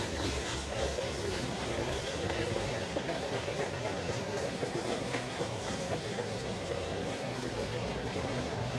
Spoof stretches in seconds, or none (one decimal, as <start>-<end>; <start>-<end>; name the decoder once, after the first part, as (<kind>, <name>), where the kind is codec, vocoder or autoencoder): 0.0-8.8 (codec, SNAC)